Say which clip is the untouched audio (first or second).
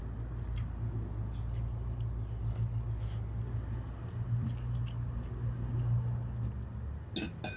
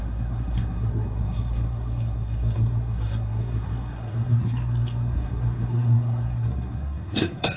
first